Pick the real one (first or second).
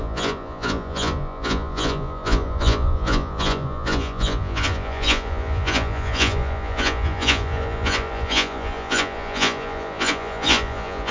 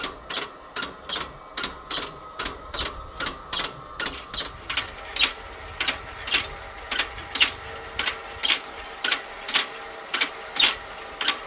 second